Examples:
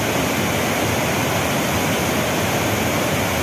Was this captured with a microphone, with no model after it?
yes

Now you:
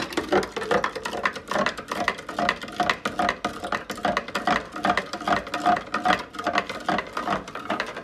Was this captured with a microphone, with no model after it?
yes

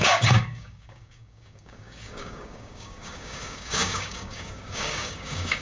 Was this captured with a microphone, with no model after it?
no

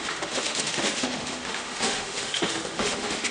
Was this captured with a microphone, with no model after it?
no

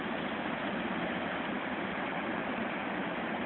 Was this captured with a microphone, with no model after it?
yes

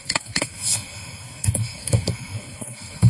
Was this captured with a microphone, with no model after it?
no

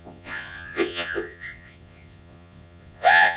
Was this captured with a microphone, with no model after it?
no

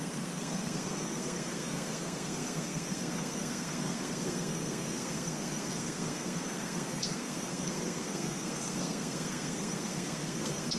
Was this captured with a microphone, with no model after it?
no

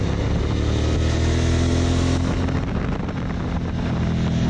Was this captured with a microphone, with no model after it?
yes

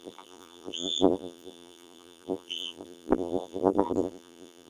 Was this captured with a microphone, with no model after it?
no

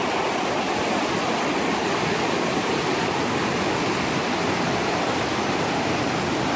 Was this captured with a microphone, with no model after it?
yes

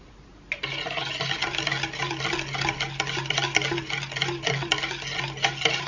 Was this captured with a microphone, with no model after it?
yes